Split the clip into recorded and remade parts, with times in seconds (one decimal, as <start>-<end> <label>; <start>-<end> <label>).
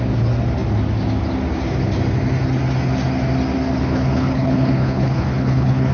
0.0-3.8 recorded; 3.8-5.9 remade